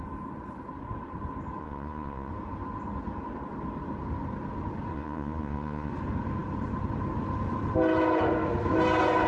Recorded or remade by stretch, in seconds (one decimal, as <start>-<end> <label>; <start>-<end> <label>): 0.0-1.6 recorded; 1.6-2.3 remade; 2.3-4.9 recorded; 4.9-5.9 remade; 5.9-9.3 recorded